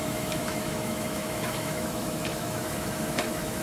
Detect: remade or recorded remade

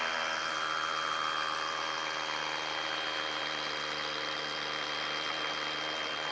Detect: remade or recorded recorded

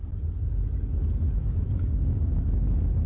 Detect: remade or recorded recorded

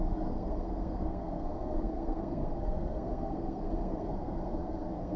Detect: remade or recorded remade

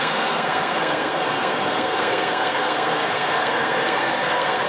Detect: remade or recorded remade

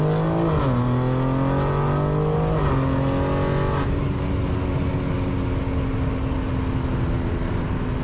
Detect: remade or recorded recorded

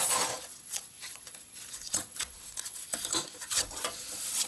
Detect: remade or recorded remade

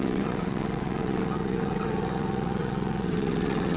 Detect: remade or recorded remade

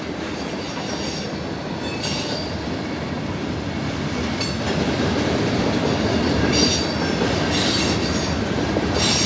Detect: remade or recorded recorded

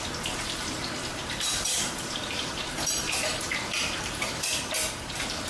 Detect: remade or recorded remade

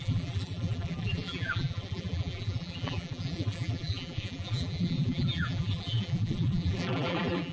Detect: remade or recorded remade